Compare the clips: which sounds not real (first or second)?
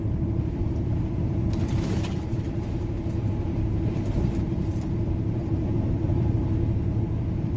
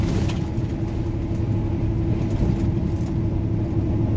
first